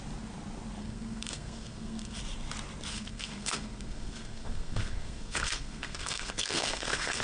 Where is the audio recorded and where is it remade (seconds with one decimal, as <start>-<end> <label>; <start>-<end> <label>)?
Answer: 0.0-0.8 recorded; 0.8-2.2 remade; 2.2-2.9 recorded; 2.9-7.2 remade